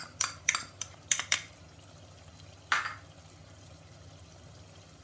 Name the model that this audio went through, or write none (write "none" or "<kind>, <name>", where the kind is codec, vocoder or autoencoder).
none